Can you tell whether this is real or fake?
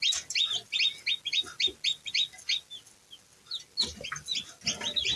real